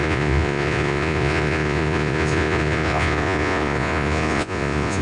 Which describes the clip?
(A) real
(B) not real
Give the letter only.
B